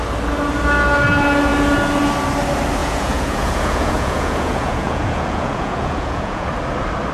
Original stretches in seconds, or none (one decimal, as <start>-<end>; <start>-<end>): 0.0-2.8; 6.5-7.1